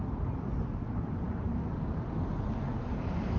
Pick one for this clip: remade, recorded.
recorded